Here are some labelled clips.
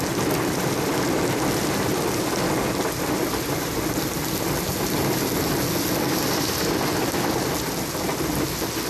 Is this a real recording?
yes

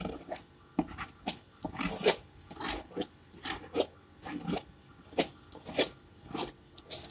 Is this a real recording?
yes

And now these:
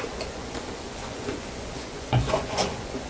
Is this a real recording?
no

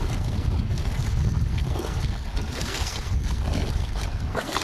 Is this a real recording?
no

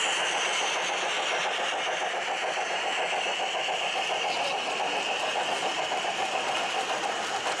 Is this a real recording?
yes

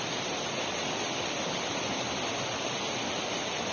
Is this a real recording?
yes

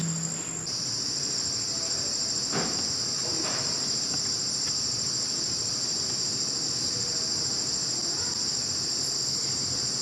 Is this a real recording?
yes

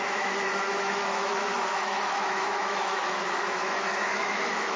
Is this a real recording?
no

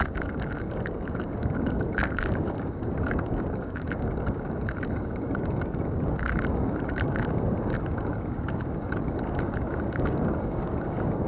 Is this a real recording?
no